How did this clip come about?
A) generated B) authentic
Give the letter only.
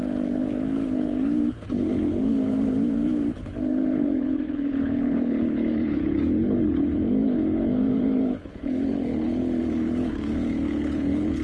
A